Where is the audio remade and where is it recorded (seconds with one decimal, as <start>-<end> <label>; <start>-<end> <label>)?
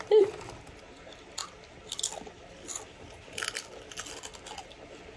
0.0-5.2 recorded